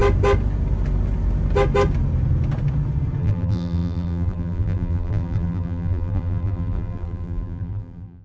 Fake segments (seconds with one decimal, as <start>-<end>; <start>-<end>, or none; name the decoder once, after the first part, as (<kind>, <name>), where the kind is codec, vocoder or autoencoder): 3.2-8.2 (vocoder, BigVGAN v2)